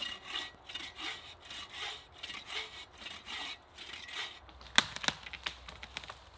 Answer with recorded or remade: recorded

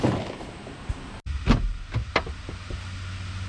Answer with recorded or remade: recorded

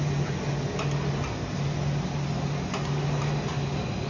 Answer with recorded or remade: recorded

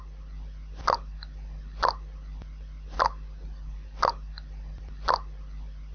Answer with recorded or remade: recorded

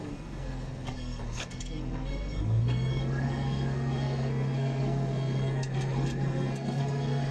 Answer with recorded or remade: remade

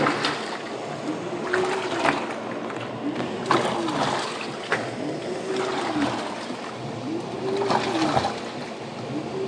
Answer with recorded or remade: recorded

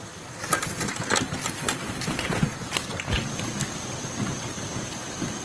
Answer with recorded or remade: recorded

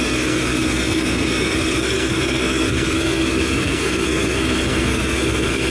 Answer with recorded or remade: remade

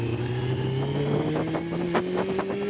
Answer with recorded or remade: recorded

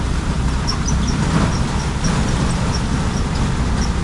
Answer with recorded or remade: recorded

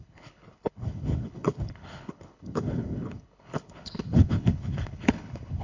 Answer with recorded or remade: remade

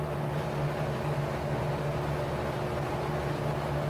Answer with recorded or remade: recorded